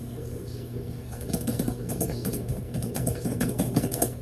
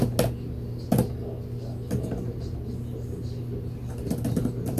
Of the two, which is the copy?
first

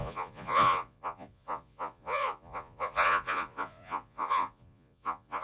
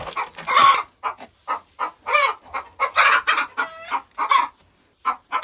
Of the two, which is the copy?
first